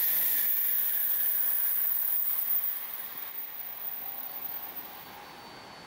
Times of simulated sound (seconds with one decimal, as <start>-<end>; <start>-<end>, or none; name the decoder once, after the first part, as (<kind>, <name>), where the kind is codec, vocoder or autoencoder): 1.0-3.3 (vocoder, BigVGAN v2)